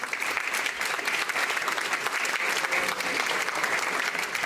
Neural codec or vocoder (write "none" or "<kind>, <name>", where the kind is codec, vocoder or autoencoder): none